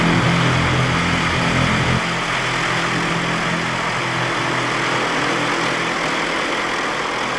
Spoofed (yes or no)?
no